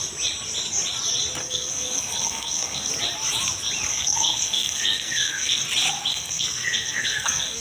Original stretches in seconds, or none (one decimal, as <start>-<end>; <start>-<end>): 0.0-1.4; 2.9-3.9; 5.6-6.1